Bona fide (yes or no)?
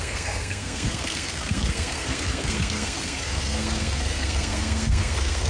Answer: no